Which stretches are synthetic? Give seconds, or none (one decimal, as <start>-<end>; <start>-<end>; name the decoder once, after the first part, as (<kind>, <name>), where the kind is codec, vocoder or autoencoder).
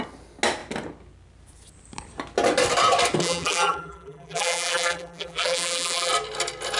3.2-6.1 (vocoder, BigVGAN v2)